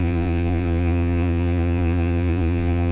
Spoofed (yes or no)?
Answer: yes